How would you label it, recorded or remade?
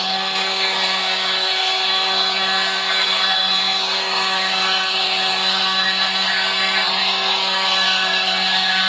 remade